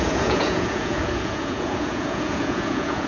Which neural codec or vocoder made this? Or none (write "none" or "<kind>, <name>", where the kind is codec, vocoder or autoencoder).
vocoder, Vocos